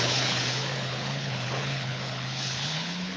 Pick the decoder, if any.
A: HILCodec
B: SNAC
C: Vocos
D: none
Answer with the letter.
A